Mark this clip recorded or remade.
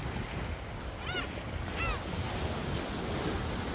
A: recorded